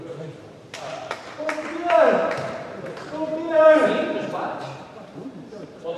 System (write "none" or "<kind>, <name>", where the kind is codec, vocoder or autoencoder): vocoder, BigVGAN v2